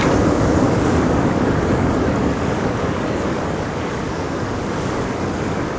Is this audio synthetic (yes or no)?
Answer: yes